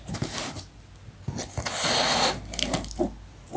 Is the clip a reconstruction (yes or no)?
no